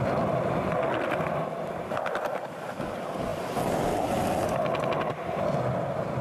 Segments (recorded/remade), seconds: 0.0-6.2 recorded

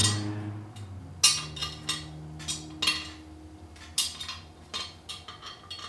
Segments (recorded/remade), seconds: 0.0-5.9 recorded

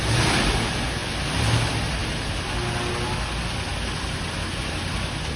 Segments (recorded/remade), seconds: 0.0-1.0 recorded; 1.0-1.5 remade; 1.5-5.4 recorded

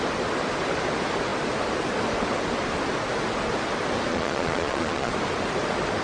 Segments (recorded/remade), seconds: 0.0-4.1 recorded; 4.1-5.1 remade; 5.1-6.0 recorded

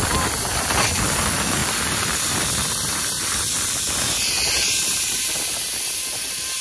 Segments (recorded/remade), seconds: 0.0-6.6 recorded